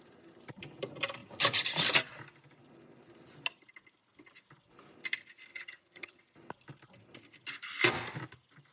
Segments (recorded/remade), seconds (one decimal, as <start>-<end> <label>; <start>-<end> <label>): 0.0-5.5 recorded; 5.5-6.2 remade; 6.2-8.7 recorded